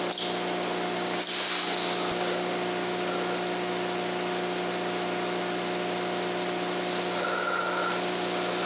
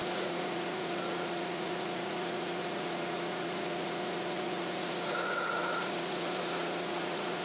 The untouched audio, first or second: first